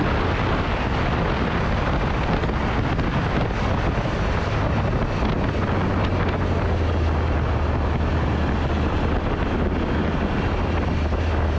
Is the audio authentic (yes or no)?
yes